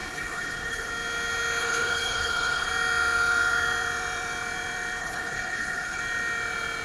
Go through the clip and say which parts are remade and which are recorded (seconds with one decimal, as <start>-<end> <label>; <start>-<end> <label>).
0.0-0.9 remade; 0.9-1.6 recorded; 1.6-2.7 remade; 2.7-5.0 recorded; 5.0-6.0 remade; 6.0-6.8 recorded